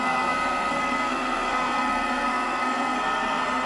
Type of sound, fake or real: fake